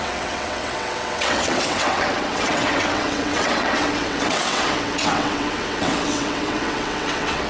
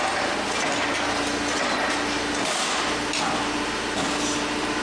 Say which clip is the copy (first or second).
first